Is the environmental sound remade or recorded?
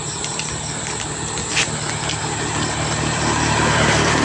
remade